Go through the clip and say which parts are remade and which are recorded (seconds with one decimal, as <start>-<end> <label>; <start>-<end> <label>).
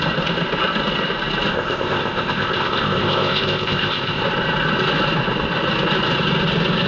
0.0-1.5 recorded; 1.5-4.2 remade; 4.2-6.9 recorded